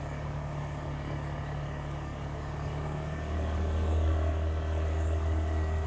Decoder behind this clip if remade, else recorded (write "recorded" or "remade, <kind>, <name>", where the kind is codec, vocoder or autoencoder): remade, codec, DAC